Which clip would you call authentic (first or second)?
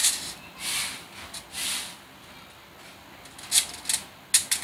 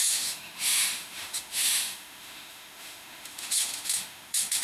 first